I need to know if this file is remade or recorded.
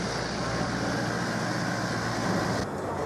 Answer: recorded